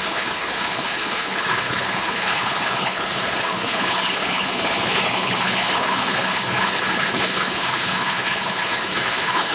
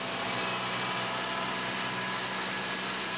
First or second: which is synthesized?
first